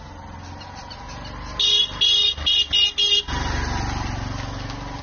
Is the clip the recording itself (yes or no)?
yes